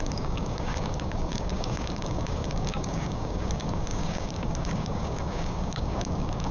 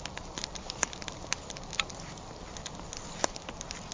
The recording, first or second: second